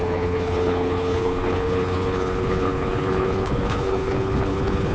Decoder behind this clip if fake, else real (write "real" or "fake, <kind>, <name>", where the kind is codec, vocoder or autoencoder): fake, codec, HILCodec